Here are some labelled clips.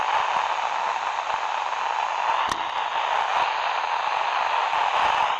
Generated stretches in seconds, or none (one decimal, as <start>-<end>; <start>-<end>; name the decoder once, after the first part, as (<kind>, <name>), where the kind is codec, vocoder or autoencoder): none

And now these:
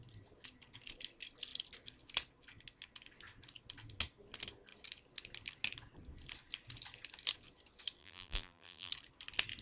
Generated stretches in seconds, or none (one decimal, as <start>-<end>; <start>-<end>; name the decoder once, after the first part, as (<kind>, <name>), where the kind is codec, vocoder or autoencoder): 8.0-8.9 (vocoder, BigVGAN v2)

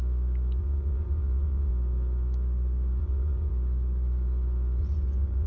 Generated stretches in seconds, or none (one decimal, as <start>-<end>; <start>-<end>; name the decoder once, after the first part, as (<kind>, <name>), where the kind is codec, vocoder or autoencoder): 0.6-1.7 (vocoder, Vocos); 3.0-3.5; 4.8-5.5

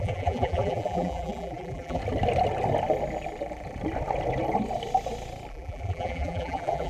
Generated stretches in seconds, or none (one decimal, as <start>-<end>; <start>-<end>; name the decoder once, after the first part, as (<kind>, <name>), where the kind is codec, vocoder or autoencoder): 0.0-2.0 (vocoder, BigVGAN v2); 5.5-6.9

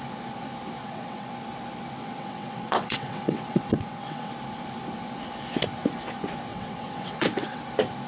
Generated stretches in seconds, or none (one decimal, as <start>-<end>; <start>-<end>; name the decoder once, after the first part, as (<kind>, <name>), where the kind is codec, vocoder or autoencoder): 0.8-1.3 (vocoder, WaveNeXt); 2.0-4.3; 6.5-7.6